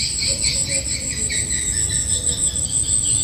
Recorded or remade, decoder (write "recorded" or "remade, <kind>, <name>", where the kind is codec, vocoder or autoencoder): recorded